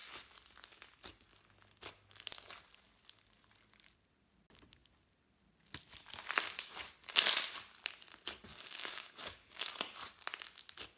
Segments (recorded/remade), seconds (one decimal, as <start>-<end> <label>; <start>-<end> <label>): 0.0-8.5 recorded; 8.5-9.7 remade; 9.7-11.0 recorded